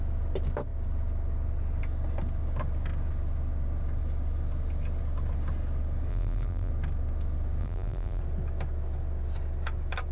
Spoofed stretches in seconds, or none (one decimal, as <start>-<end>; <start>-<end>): 6.1-6.7; 7.6-8.2